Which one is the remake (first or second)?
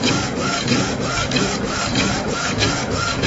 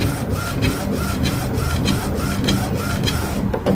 first